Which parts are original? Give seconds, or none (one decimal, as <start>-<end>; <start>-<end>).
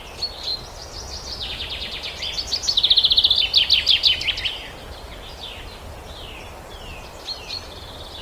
0.0-8.2